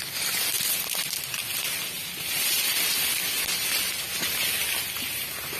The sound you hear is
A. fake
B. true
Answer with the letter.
B